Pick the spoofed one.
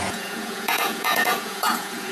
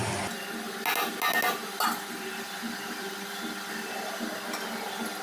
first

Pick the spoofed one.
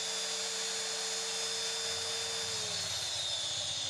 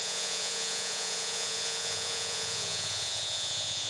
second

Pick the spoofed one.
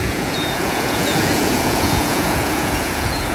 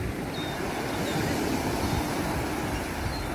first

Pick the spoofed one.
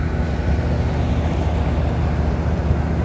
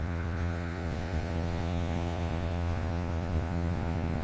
second